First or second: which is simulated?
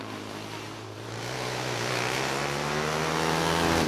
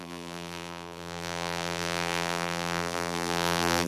second